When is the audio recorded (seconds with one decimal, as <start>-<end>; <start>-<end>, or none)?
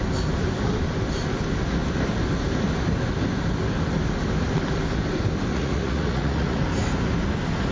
0.0-5.5; 6.6-7.7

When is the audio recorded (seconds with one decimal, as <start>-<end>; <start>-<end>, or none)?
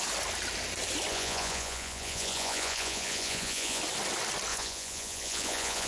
0.0-1.1; 3.8-4.5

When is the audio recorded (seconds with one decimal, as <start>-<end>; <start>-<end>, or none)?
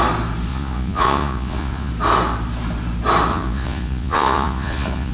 0.0-0.5; 1.9-3.3